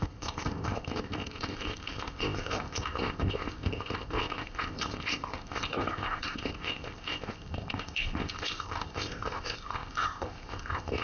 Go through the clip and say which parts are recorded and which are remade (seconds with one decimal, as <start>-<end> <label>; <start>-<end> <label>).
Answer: 0.0-11.0 remade